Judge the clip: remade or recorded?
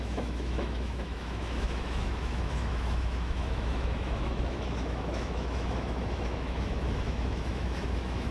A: remade